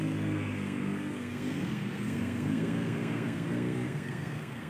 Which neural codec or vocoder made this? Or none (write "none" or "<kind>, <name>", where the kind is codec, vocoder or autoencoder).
codec, SNAC